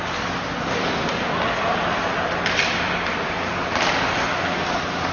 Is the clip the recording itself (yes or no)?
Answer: yes